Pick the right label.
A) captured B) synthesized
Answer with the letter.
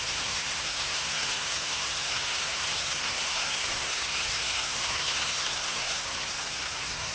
B